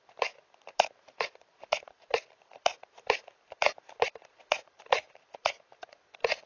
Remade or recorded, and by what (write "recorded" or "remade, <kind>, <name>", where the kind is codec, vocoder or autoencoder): remade, vocoder, BigVGAN v2